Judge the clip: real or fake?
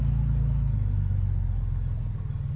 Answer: real